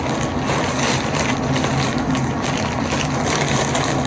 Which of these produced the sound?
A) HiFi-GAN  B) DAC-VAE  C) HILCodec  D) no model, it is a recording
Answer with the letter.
D